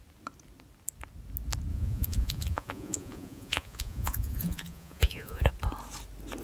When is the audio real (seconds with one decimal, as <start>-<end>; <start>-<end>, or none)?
0.0-1.7; 5.5-6.4